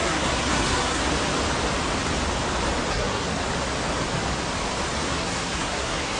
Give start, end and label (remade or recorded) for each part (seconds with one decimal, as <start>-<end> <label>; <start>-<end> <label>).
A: 0.0-1.0 remade; 1.0-2.9 recorded; 2.9-3.4 remade; 3.4-5.1 recorded; 5.1-6.2 remade